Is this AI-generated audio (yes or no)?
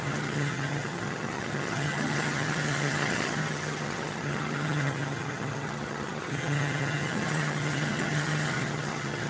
yes